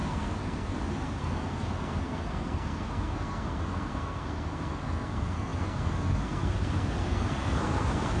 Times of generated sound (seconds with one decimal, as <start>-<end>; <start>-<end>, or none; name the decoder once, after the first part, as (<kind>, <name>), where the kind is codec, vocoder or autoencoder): 0.0-8.2 (codec, SNAC)